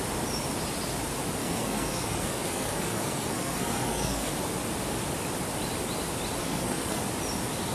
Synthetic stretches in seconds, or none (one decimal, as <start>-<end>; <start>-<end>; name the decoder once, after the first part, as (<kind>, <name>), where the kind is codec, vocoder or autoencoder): 1.4-4.3 (codec, SNAC); 6.4-7.0